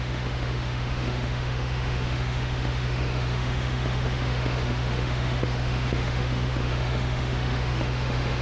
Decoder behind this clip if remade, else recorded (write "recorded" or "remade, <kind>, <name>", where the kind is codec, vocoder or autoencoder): remade, autoencoder, DAC-VAE